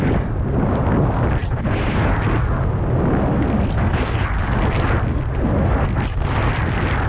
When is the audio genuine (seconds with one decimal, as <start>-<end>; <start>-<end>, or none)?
0.0-7.1